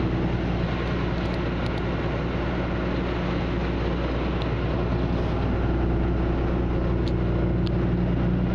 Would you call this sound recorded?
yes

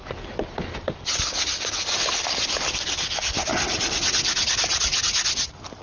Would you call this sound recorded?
yes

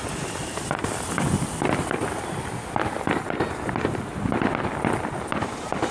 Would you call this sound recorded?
yes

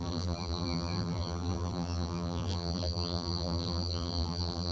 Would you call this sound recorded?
no